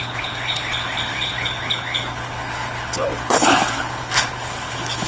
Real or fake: fake